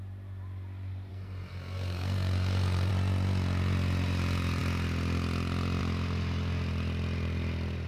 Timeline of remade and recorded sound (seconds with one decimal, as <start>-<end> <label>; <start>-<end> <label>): 0.0-1.1 recorded; 1.1-2.9 remade; 2.9-7.9 recorded